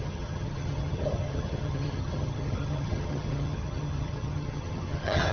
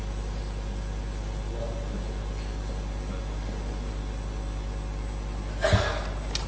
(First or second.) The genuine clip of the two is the second